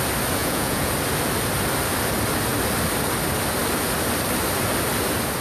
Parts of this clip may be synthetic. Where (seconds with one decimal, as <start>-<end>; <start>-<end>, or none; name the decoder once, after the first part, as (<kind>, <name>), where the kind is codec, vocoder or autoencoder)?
0.4-0.9 (vocoder, Vocos)